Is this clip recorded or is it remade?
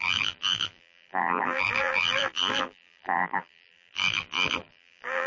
remade